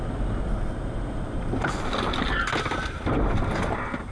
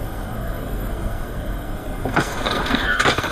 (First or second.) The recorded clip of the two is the first